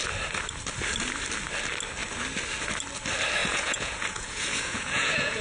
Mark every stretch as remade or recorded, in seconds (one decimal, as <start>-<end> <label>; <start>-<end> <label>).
0.0-3.4 recorded; 3.4-5.4 remade